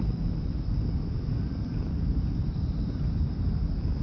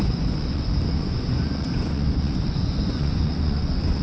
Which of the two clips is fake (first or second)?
second